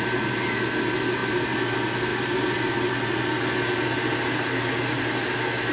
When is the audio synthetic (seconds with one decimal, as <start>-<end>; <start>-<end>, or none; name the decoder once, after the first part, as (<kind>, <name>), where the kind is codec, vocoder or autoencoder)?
none

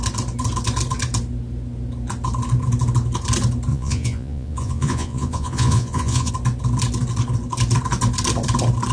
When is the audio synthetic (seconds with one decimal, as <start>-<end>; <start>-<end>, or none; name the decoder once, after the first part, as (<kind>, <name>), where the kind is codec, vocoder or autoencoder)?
3.7-6.3 (vocoder, Vocos)